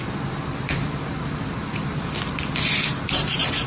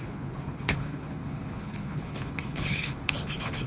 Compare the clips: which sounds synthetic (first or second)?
second